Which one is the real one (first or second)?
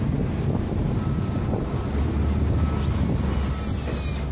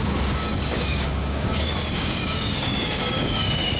first